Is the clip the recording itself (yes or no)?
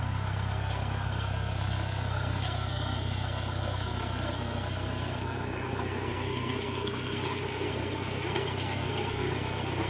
no